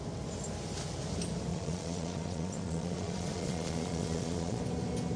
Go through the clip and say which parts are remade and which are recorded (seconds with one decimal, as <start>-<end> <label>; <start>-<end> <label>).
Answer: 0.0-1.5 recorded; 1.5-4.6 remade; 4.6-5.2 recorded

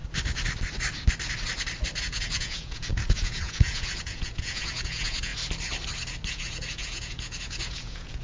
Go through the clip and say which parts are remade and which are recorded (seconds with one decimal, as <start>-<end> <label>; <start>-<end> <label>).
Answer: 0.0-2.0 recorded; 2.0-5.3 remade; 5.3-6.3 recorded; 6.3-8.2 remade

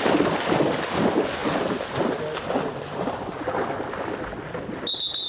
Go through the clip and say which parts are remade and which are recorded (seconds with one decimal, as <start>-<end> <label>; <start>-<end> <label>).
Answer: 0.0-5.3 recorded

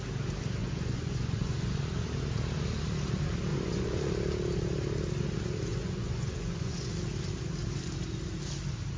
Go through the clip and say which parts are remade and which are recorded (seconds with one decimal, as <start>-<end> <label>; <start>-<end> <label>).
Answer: 0.0-0.6 recorded; 0.6-1.7 remade; 1.7-3.5 recorded; 3.5-4.1 remade; 4.1-5.7 recorded; 5.7-6.9 remade; 6.9-9.0 recorded

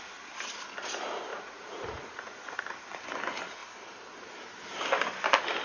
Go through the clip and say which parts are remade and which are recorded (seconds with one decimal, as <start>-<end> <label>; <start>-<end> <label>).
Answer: 0.0-1.3 recorded; 1.3-2.6 remade; 2.6-5.6 recorded

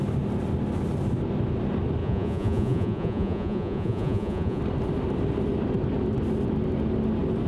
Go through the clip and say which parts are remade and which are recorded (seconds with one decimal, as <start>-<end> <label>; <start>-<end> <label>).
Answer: 0.0-2.0 recorded; 2.0-4.6 remade; 4.6-7.5 recorded

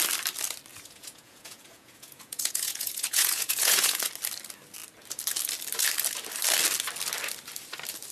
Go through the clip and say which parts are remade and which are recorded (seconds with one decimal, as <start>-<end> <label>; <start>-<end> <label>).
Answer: 0.0-0.7 recorded; 0.7-4.0 remade; 4.0-8.1 recorded

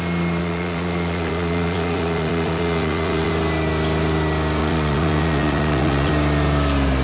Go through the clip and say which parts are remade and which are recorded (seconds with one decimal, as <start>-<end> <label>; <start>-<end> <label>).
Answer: 0.0-0.4 recorded; 0.4-3.3 remade; 3.3-4.6 recorded; 4.6-6.1 remade; 6.1-7.0 recorded